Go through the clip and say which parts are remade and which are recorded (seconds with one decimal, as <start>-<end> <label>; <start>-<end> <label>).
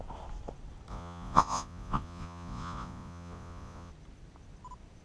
0.0-0.9 recorded; 0.9-3.9 remade; 3.9-5.0 recorded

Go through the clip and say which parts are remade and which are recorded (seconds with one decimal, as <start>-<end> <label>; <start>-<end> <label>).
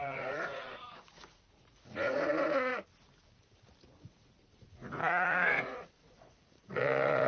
0.0-2.7 remade; 2.7-4.1 recorded; 4.1-7.3 remade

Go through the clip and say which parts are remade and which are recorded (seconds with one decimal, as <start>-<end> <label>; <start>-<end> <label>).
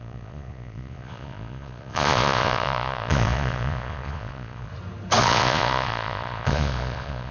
0.0-4.7 remade; 4.7-5.2 recorded; 5.2-7.3 remade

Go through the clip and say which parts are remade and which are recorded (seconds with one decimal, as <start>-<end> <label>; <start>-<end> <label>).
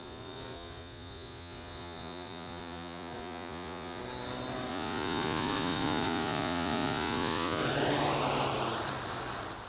0.0-4.0 remade; 4.0-4.7 recorded; 4.7-7.6 remade; 7.6-9.7 recorded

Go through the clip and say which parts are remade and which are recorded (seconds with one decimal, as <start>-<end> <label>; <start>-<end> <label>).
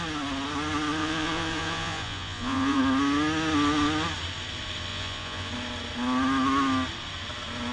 0.0-1.0 recorded; 1.0-2.8 remade; 2.8-4.9 recorded; 4.9-5.5 remade; 5.5-7.7 recorded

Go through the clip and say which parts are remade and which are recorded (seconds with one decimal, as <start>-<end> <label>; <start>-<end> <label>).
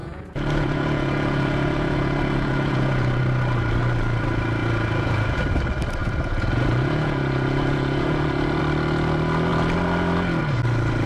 0.0-3.2 remade; 3.2-4.6 recorded; 4.6-5.4 remade; 5.4-6.0 recorded; 6.0-8.6 remade; 8.6-11.1 recorded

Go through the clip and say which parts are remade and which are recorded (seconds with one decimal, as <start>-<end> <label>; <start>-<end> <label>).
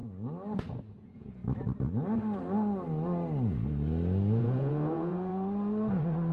0.0-0.9 recorded; 0.9-1.4 remade; 1.4-4.4 recorded; 4.4-5.3 remade; 5.3-6.3 recorded